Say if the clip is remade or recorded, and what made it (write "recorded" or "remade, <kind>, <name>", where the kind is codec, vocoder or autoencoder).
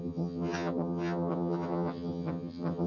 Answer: remade, vocoder, HiFi-GAN